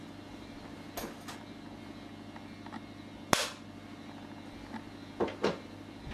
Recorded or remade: recorded